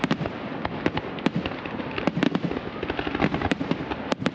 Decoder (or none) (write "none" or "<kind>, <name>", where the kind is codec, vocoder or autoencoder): none